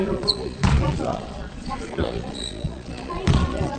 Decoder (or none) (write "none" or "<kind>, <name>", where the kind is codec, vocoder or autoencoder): vocoder, Vocos